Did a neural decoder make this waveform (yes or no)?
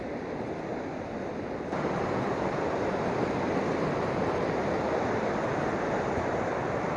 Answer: yes